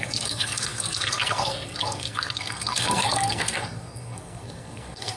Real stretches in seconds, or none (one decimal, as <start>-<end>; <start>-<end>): none